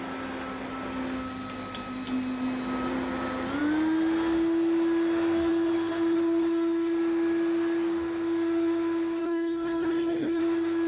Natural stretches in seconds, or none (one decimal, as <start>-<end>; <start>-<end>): 0.0-9.2; 10.4-10.9